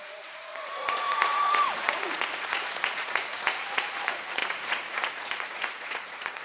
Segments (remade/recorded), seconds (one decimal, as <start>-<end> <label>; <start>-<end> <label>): 0.0-6.4 remade